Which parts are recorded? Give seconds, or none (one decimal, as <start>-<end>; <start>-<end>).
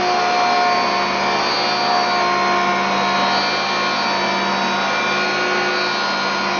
0.0-6.6